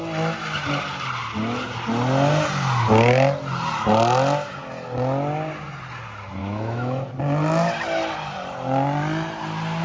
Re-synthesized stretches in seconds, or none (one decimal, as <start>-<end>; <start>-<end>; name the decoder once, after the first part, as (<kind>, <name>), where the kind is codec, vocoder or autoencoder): 6.4-7.1 (autoencoder, DAC-VAE)